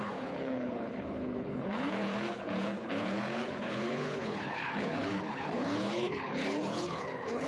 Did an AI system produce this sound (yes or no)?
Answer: yes